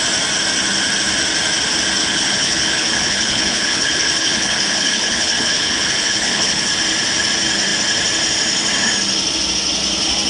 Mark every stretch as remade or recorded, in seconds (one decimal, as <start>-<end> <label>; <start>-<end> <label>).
0.0-2.0 recorded; 2.0-6.7 remade; 6.7-10.3 recorded

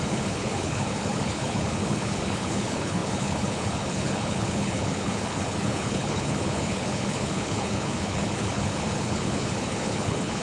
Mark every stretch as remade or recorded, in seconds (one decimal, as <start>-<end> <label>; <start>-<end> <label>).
0.0-10.4 remade

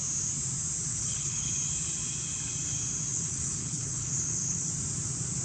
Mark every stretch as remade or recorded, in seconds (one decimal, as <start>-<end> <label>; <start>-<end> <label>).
0.0-0.9 recorded; 0.9-1.5 remade; 1.5-3.1 recorded; 3.1-4.7 remade; 4.7-5.4 recorded